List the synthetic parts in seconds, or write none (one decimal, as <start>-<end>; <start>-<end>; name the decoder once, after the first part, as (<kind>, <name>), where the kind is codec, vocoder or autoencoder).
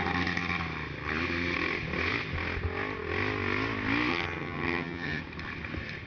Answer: 4.1-5.2 (vocoder, HiFi-GAN)